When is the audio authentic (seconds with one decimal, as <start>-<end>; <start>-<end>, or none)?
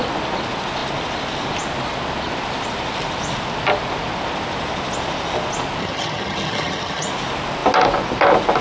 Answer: 0.0-5.8; 7.1-8.6